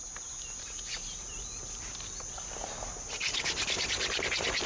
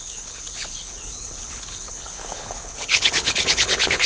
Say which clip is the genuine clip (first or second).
first